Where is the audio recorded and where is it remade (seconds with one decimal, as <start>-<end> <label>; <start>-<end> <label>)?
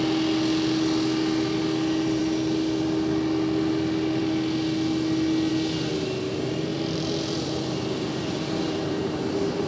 0.0-6.7 recorded; 6.7-9.0 remade; 9.0-9.7 recorded